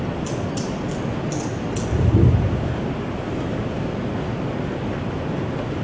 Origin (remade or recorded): recorded